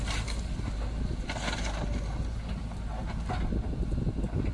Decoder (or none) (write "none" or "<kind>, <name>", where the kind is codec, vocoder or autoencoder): none